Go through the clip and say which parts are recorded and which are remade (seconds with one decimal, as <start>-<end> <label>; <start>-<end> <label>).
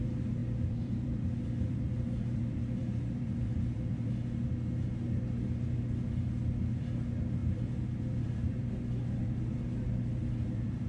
0.0-0.4 recorded; 0.4-4.1 remade; 4.1-7.4 recorded; 7.4-10.9 remade